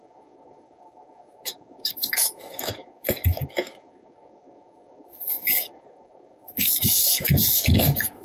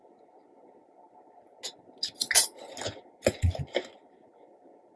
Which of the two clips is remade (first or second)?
first